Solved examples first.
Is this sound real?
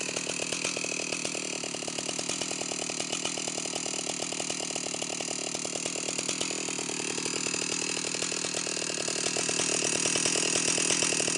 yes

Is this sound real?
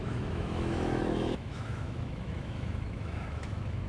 no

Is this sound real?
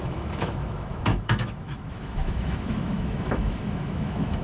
no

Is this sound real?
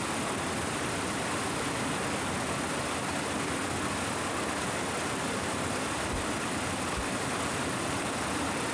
yes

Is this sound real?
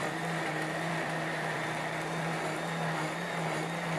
no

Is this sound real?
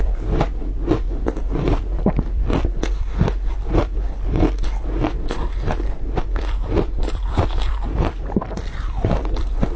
no